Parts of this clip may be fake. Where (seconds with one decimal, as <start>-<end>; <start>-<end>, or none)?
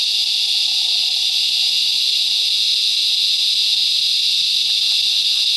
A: 1.0-2.2; 3.8-4.7